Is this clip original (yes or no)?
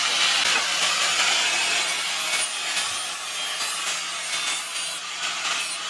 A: yes